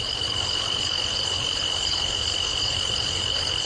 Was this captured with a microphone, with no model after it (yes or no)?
no